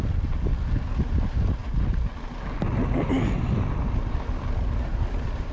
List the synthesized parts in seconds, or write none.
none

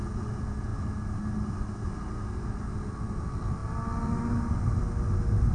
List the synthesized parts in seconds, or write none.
none

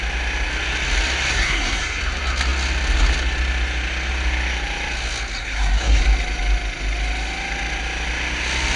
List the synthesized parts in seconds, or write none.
1.3-2.0; 5.4-6.0

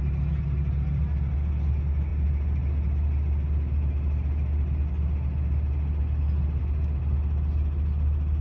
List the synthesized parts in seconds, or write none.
none

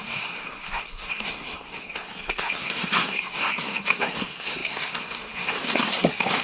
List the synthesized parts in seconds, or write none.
0.0-6.4

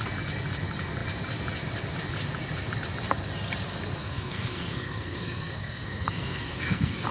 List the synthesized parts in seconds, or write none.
4.0-7.1

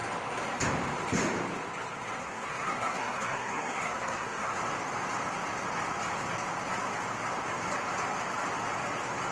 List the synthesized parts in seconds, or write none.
2.2-4.6

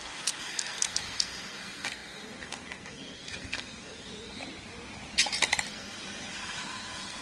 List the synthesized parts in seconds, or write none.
0.0-4.4; 5.7-7.2